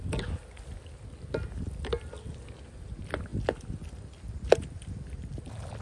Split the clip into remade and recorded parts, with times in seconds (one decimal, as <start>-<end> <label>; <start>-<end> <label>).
0.0-5.8 recorded